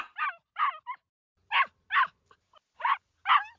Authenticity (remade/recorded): recorded